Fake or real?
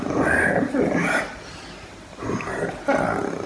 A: real